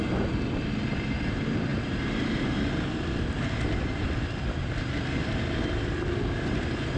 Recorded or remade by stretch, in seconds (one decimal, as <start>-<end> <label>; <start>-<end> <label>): 0.0-1.7 recorded; 1.7-2.7 remade; 2.7-7.0 recorded